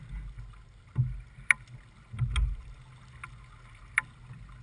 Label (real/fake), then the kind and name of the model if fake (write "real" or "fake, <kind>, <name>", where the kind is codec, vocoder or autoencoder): real